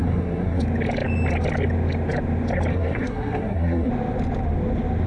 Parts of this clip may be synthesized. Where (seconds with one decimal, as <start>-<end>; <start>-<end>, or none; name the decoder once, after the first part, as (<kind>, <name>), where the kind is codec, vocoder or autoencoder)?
0.0-0.6 (codec, SNAC); 2.7-3.9